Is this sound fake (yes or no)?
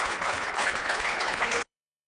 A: yes